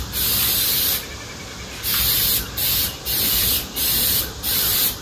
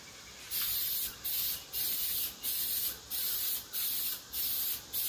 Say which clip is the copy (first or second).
first